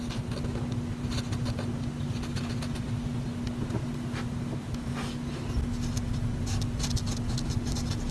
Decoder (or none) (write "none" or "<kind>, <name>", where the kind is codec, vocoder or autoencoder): none